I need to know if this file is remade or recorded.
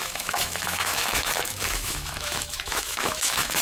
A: remade